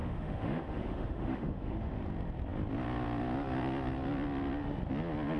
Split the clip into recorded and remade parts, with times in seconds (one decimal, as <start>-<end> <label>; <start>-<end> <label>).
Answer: 0.0-2.0 remade; 2.0-5.4 recorded